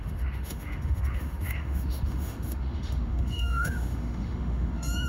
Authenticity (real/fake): fake